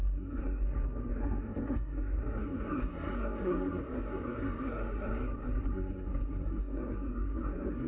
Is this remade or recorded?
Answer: remade